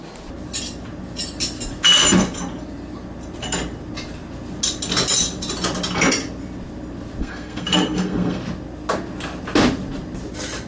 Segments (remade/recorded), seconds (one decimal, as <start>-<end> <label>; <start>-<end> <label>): 0.0-7.2 recorded; 7.2-8.4 remade; 8.4-10.7 recorded